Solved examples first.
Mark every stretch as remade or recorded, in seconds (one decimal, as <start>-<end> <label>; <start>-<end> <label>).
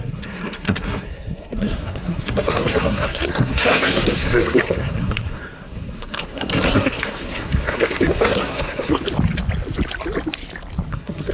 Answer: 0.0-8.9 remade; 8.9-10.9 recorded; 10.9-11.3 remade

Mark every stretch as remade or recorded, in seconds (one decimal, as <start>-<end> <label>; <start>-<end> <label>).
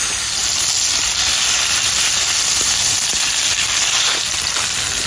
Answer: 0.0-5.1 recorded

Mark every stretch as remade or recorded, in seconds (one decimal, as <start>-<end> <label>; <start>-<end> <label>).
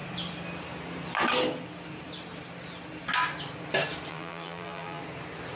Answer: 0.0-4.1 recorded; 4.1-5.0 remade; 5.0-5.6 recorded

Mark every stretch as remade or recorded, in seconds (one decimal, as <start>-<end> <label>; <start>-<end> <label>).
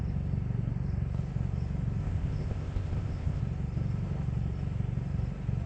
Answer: 0.0-2.0 recorded; 2.0-3.4 remade; 3.4-5.7 recorded